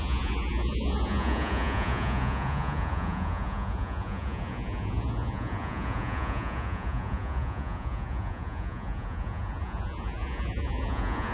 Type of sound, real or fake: fake